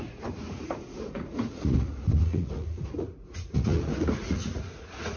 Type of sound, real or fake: fake